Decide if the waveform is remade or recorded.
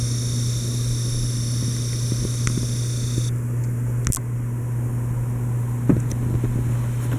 recorded